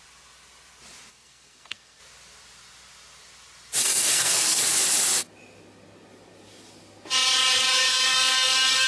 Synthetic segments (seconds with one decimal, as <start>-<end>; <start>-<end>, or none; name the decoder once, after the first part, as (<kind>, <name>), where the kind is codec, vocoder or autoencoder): 1.1-2.0 (codec, SNAC); 3.8-4.6; 7.9-8.9